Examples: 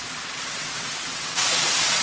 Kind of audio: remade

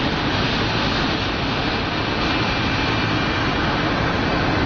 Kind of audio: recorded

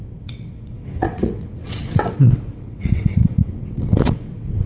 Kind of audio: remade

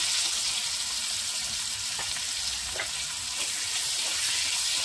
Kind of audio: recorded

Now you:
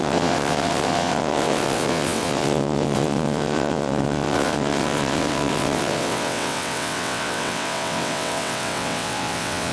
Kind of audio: remade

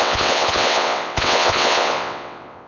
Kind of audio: remade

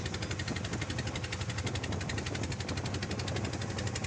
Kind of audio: recorded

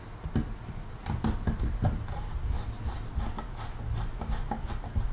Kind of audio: recorded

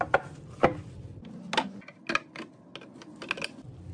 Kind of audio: recorded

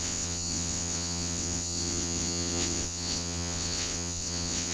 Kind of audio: remade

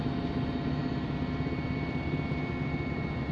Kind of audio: recorded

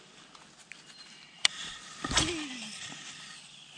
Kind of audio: recorded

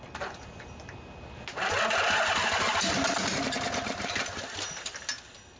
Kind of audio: recorded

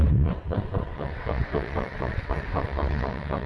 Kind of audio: remade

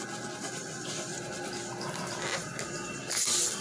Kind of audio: recorded